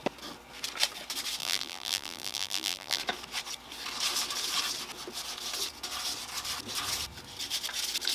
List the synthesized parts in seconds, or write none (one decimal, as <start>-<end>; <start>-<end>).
1.4-3.0